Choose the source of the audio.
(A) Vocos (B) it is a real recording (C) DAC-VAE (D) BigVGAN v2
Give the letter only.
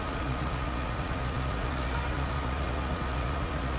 A